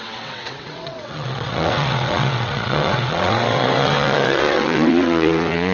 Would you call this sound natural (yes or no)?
no